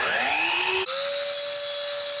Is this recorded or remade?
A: recorded